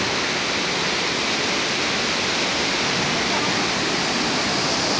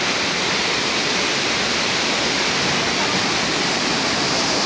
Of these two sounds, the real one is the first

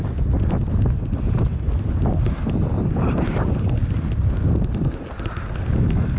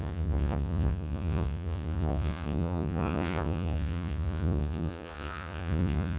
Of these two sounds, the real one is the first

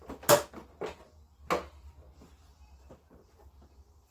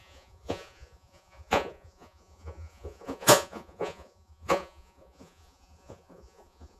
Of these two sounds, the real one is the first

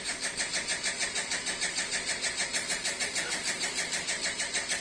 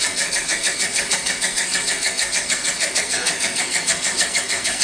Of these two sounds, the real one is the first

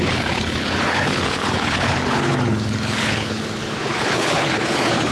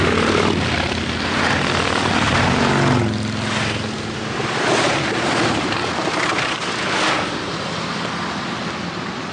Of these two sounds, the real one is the second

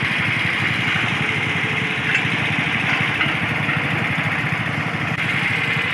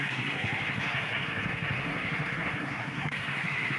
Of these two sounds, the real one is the first